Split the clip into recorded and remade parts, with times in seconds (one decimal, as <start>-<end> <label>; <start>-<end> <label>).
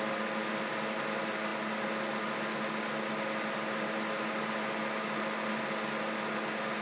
0.0-6.8 recorded